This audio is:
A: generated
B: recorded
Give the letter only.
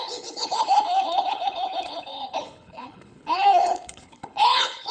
A